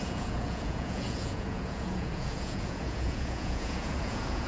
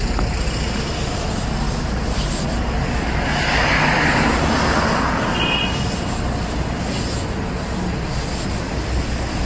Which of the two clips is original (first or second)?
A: second